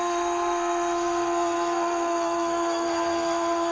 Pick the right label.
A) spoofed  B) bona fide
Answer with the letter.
A